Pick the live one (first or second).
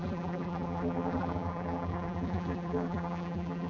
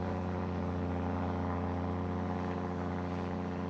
second